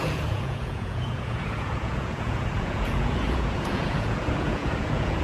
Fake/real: fake